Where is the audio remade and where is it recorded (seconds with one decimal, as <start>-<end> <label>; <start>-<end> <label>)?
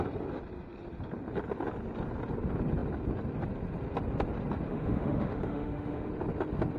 0.0-4.7 recorded; 4.7-6.1 remade; 6.1-6.8 recorded